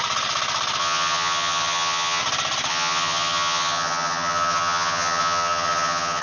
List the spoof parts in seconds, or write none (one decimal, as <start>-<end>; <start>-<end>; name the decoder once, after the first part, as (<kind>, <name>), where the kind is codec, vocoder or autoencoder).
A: 0.8-2.2 (vocoder, HiFi-GAN); 2.7-6.2